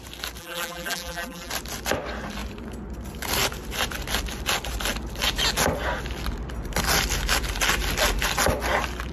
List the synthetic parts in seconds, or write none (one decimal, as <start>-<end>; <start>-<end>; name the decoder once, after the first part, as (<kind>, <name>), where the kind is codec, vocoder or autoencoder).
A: 0.4-1.5 (vocoder, BigVGAN v2)